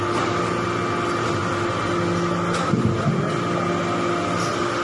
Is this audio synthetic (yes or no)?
no